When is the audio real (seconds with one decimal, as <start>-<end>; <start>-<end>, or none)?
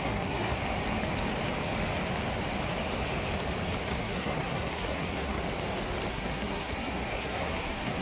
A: 0.6-3.9; 5.4-6.1